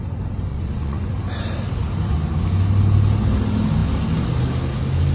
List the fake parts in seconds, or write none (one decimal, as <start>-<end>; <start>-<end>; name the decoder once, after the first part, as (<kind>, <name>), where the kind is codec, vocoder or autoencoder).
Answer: 0.5-1.1 (vocoder, Vocos)